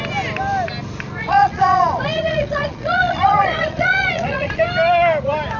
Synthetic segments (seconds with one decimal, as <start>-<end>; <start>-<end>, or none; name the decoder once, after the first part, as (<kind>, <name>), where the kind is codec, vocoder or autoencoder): 1.2-4.6 (vocoder, Vocos)